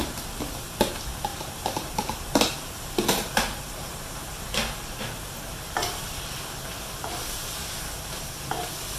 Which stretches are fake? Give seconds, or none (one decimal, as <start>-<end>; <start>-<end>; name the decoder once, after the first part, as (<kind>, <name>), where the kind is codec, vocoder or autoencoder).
1.3-3.9 (vocoder, BigVGAN v2)